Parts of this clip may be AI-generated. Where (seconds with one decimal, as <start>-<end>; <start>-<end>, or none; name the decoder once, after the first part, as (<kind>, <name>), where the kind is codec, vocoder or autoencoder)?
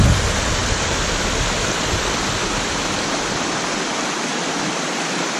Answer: 0.6-3.2 (vocoder, BigVGAN v2); 4.3-4.8